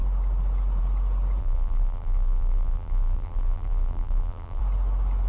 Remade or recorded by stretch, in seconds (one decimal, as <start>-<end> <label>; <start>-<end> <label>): 0.0-1.4 recorded; 1.4-4.6 remade; 4.6-5.3 recorded